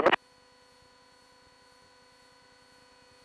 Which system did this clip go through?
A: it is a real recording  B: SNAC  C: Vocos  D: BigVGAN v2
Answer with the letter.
A